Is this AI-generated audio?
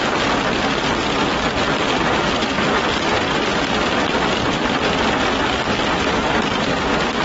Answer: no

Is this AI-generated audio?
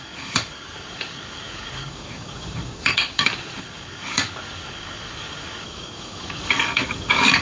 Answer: yes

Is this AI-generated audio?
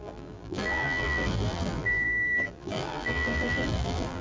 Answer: yes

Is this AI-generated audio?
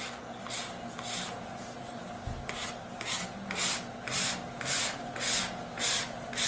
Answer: no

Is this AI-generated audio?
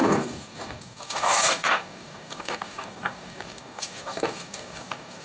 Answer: yes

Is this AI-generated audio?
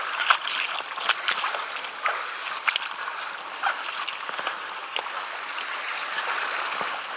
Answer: no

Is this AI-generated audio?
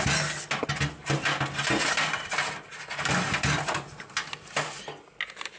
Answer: no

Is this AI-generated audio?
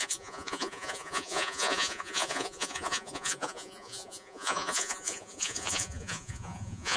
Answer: yes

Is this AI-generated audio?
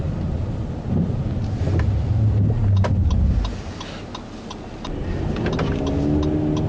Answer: no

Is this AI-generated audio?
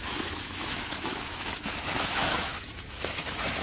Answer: yes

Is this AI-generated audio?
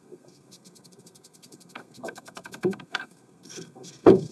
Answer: yes